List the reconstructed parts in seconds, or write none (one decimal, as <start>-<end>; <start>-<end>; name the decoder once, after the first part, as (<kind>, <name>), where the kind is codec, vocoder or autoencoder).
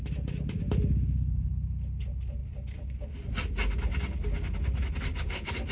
2.4-3.3 (vocoder, BigVGAN v2); 5.1-5.7